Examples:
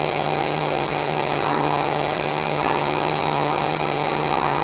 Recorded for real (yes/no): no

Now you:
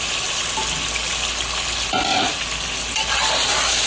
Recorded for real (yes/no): yes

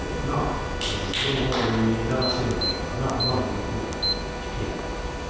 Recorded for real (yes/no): yes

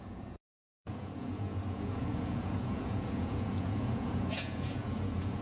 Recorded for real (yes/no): no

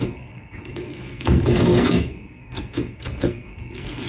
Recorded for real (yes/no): no